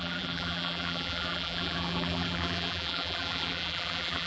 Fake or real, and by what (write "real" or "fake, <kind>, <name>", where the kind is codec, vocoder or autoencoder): fake, vocoder, BigVGAN v2